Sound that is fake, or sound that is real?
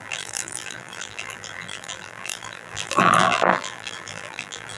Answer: fake